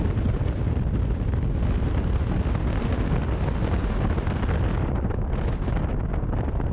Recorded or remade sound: recorded